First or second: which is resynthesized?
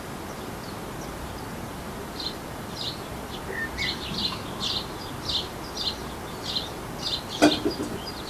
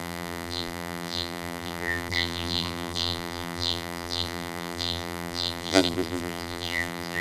second